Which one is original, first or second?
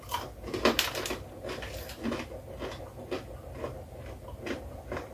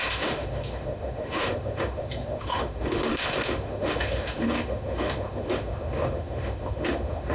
first